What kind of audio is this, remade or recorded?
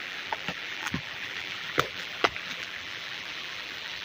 remade